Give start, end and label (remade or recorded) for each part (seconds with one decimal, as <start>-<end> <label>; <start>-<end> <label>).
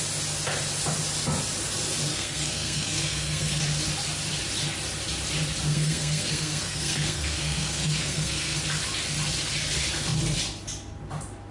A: 0.0-2.1 recorded; 2.1-3.6 remade; 3.6-5.7 recorded; 5.7-8.6 remade; 8.6-11.5 recorded